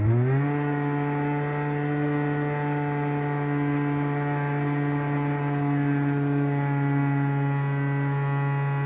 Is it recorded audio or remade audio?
recorded